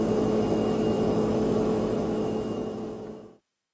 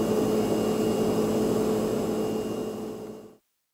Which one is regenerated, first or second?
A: first